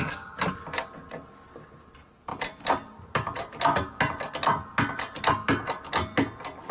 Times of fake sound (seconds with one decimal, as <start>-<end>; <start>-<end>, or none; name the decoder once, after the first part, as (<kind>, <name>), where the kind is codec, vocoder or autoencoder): 2.3-4.3 (vocoder, BigVGAN v2)